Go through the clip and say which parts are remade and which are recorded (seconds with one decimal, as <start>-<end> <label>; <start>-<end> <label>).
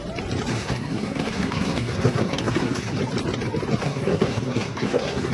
0.0-0.5 recorded; 0.5-3.0 remade; 3.0-3.8 recorded; 3.8-5.3 remade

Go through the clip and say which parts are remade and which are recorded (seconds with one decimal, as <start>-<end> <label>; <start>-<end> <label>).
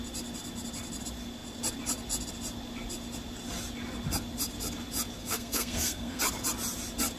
0.0-5.2 recorded; 5.2-6.2 remade; 6.2-7.2 recorded